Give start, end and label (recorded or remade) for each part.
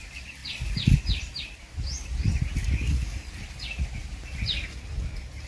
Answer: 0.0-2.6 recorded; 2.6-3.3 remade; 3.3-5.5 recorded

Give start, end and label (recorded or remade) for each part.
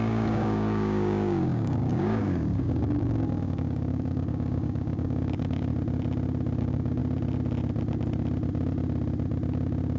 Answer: 0.0-5.7 remade; 5.7-6.6 recorded; 6.6-7.0 remade; 7.0-10.0 recorded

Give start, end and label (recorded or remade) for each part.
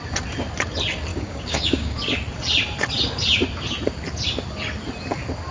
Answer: 0.0-1.1 recorded; 1.1-2.0 remade; 2.0-5.5 recorded